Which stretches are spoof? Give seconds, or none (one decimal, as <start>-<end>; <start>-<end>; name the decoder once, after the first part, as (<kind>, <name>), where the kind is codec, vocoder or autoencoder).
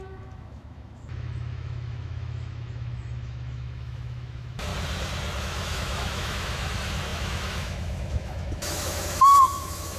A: 0.0-4.7 (autoencoder, DAC-VAE); 5.4-10.0